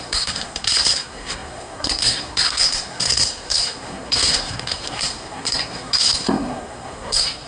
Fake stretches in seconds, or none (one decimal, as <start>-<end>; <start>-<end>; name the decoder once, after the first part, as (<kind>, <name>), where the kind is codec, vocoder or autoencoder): 0.0-7.5 (codec, SNAC)